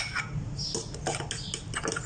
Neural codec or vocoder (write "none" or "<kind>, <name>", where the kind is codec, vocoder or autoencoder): none